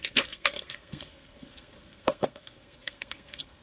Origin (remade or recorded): remade